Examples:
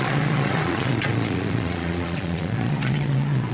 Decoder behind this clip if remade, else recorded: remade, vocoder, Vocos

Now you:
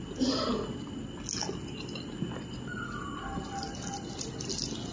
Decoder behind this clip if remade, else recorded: recorded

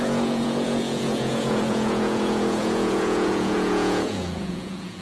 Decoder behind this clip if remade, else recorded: remade, vocoder, Vocos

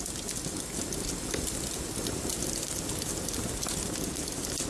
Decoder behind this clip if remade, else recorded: recorded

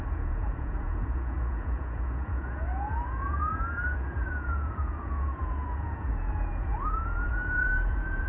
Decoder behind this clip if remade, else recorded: remade, vocoder, Vocos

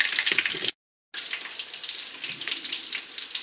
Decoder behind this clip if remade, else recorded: recorded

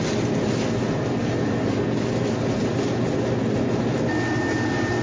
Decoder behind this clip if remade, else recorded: recorded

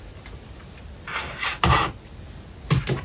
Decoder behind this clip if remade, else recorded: recorded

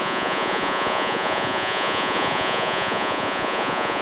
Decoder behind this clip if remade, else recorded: remade, vocoder, Vocos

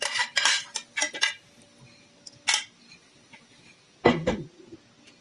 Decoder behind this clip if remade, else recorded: recorded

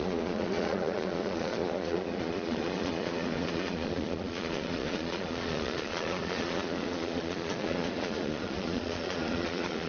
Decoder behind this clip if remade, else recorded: remade, vocoder, Vocos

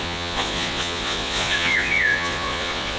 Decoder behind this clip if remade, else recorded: remade, vocoder, Vocos